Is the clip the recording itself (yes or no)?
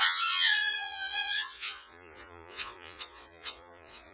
no